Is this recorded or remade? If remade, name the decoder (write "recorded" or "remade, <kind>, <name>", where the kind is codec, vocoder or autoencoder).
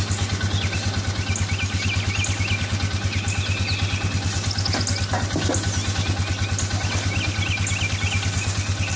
recorded